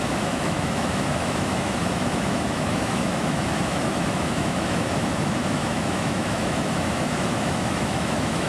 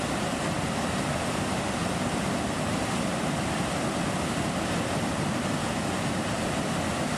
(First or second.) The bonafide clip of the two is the second